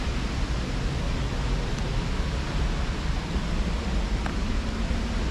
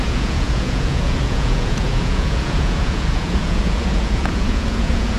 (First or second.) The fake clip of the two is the second